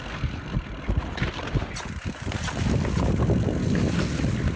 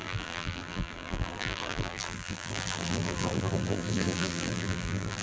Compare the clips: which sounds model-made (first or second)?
second